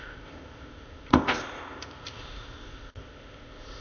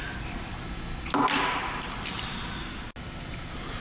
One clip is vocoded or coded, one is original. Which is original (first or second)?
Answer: second